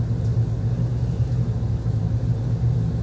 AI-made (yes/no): no